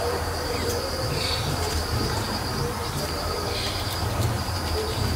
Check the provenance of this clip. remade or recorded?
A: remade